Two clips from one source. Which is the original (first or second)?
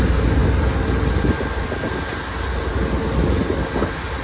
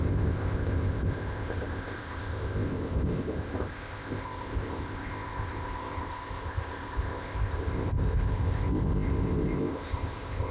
first